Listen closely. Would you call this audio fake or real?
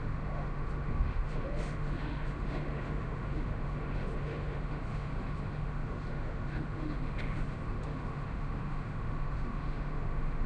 fake